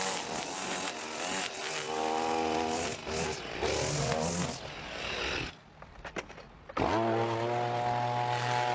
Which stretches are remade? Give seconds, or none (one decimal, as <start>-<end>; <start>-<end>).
none